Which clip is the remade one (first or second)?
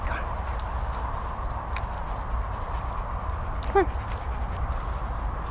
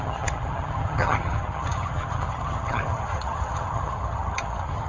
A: second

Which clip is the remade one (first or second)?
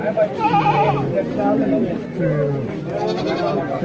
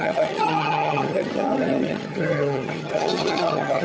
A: second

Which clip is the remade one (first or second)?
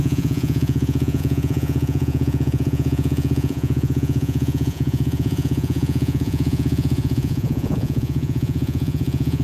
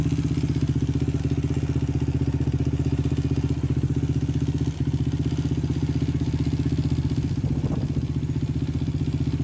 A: first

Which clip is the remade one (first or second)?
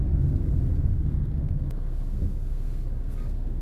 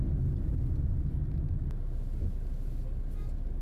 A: first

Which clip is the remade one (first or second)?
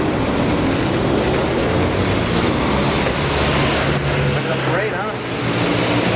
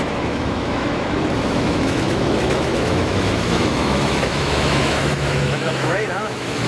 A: second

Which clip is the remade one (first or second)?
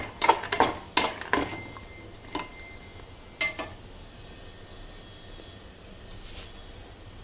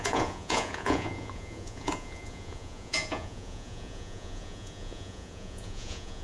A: second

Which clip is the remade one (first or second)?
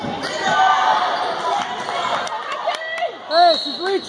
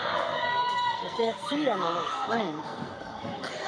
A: second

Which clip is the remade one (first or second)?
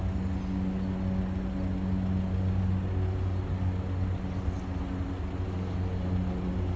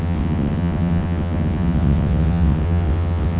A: second